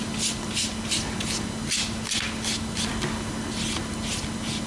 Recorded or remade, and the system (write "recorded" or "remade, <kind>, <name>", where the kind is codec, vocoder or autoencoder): recorded